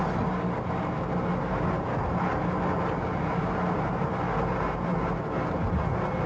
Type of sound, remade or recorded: recorded